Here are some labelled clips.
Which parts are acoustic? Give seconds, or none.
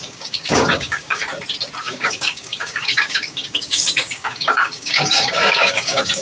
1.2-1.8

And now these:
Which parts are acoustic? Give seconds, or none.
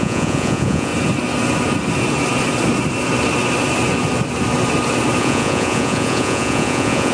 0.9-5.2